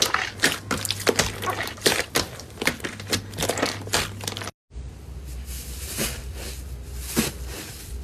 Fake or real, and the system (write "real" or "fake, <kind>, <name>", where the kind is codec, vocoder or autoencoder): real